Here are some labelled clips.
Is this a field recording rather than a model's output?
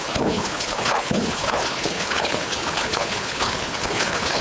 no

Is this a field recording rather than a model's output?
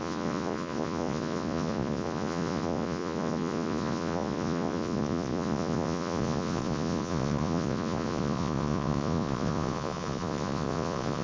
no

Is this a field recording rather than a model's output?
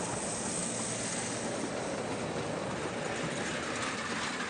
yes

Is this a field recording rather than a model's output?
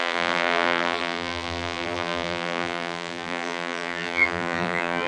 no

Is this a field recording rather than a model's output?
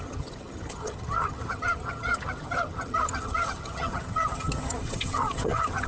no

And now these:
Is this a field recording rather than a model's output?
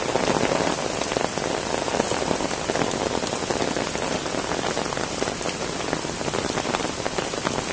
yes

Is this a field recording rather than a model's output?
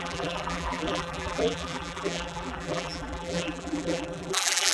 no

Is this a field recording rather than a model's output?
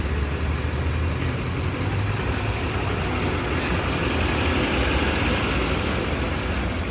yes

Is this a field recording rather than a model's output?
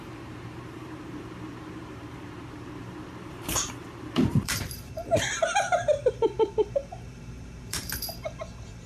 no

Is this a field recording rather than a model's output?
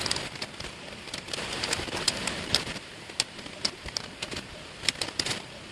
no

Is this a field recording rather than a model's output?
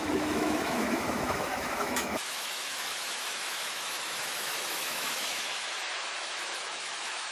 no